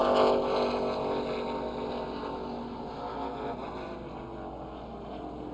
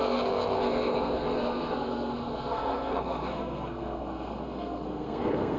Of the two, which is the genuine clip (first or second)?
first